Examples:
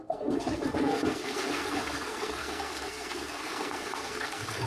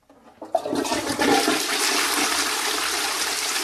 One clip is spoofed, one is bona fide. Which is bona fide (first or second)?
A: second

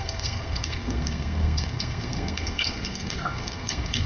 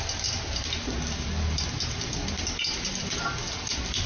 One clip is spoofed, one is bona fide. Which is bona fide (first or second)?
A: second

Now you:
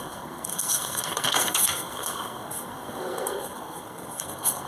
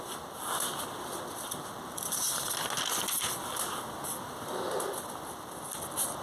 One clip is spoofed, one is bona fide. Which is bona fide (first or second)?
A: second